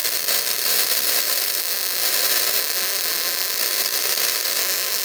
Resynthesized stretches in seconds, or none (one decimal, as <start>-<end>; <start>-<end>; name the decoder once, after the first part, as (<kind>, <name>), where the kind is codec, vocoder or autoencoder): 0.0-1.6 (autoencoder, DAC-VAE); 2.0-2.6; 3.6-4.6